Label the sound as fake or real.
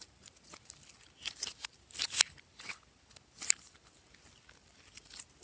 real